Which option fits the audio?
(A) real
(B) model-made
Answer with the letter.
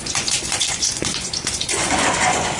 B